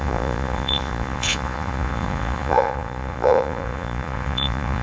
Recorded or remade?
remade